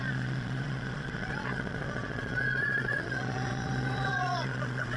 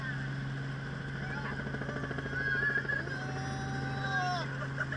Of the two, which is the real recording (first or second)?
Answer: second